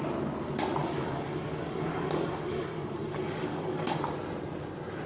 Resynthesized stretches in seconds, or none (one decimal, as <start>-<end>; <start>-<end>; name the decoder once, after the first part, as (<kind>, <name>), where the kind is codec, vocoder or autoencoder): 0.8-3.9 (codec, DAC)